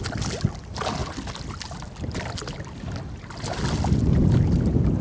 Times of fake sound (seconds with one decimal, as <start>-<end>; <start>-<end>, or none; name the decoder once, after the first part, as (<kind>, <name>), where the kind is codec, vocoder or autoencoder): none